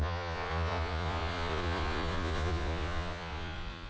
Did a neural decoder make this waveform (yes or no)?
yes